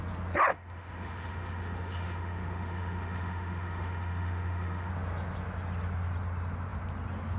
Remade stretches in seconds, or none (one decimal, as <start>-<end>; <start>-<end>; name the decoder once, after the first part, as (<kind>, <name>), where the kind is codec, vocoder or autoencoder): 0.5-4.9 (autoencoder, DAC-VAE)